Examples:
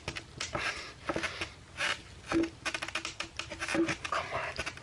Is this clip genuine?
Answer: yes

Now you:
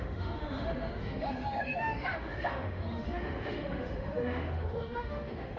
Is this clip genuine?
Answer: no